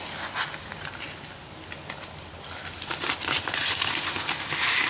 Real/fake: fake